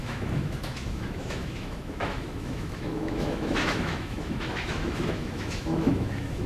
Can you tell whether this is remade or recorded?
remade